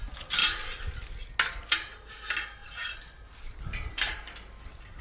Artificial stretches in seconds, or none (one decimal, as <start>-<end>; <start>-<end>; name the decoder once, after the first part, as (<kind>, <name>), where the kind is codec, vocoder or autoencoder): 0.4-0.9 (vocoder, BigVGAN v2); 2.6-4.2